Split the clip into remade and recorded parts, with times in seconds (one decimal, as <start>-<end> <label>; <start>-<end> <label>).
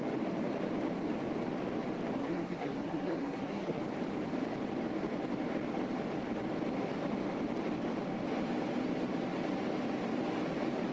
0.0-2.2 recorded; 2.2-3.8 remade; 3.8-10.9 recorded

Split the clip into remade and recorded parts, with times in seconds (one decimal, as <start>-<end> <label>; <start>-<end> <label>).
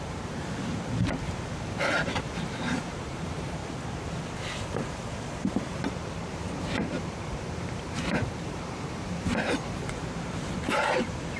0.0-3.6 remade; 3.6-5.8 recorded; 5.8-11.4 remade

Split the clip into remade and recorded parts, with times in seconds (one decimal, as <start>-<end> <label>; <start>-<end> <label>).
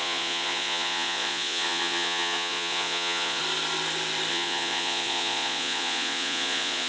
0.0-3.4 remade; 3.4-4.3 recorded; 4.3-6.9 remade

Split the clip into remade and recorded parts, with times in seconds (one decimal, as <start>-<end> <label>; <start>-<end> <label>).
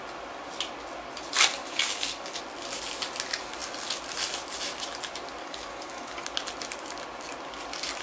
0.0-1.6 recorded; 1.6-2.4 remade; 2.4-5.4 recorded; 5.4-6.2 remade; 6.2-8.0 recorded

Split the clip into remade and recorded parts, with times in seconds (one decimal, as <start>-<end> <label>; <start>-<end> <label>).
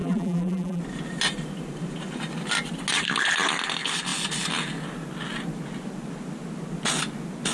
0.0-0.8 remade; 0.8-7.5 recorded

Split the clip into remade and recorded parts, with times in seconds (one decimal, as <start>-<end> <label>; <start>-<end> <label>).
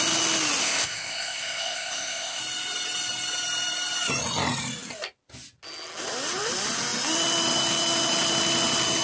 0.0-0.6 recorded; 0.6-2.4 remade; 2.4-9.0 recorded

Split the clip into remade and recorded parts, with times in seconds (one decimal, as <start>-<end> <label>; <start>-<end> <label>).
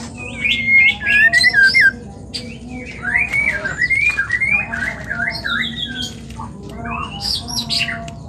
0.0-7.0 recorded; 7.0-7.7 remade; 7.7-8.3 recorded